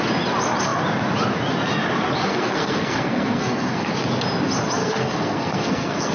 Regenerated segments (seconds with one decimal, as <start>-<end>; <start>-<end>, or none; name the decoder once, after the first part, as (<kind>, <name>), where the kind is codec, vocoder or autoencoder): 2.3-3.9 (codec, SNAC); 4.8-6.1